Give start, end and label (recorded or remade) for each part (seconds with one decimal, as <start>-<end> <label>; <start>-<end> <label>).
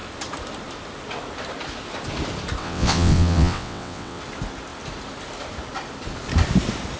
0.0-2.6 recorded; 2.6-4.2 remade; 4.2-7.0 recorded